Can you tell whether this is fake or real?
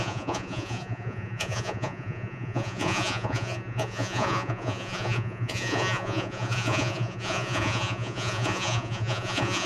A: fake